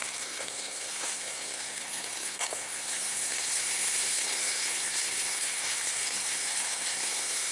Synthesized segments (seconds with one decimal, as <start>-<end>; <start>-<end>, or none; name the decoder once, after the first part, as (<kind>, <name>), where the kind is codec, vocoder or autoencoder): 0.0-7.5 (codec, SNAC)